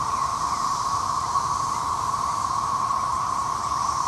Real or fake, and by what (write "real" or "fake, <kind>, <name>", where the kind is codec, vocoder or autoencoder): fake, vocoder, BigVGAN v2